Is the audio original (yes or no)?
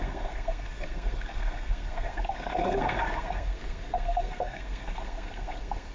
no